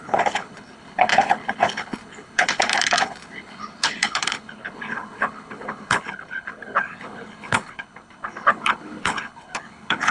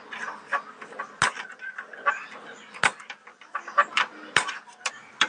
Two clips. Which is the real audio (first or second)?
second